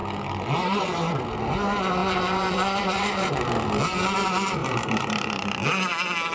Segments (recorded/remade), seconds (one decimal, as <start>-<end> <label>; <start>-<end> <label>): 0.0-2.0 recorded; 2.0-3.5 remade; 3.5-4.6 recorded; 4.6-5.4 remade; 5.4-6.3 recorded

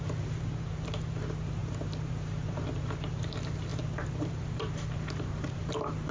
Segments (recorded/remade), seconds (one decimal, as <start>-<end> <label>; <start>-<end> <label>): 0.0-6.1 remade